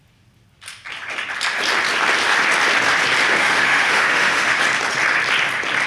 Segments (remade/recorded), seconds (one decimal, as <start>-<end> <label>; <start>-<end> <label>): 0.0-3.3 recorded; 3.3-4.6 remade; 4.6-5.9 recorded